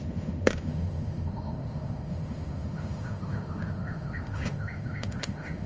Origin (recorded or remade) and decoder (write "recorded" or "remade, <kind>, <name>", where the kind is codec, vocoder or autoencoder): remade, autoencoder, DAC-VAE